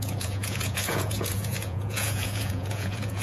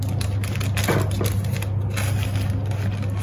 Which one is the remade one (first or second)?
first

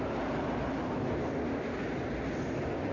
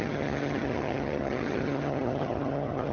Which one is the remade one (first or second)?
second